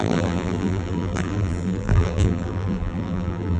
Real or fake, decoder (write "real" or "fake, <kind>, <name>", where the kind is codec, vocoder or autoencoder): fake, vocoder, BigVGAN v2